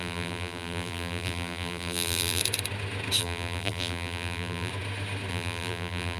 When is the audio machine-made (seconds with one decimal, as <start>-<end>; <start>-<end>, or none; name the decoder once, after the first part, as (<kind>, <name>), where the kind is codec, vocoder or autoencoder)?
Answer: 0.0-2.4 (vocoder, BigVGAN v2); 3.2-4.7; 5.3-6.2